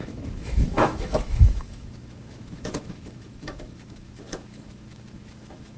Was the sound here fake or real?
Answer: fake